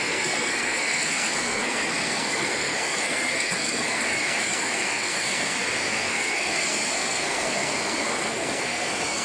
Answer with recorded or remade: remade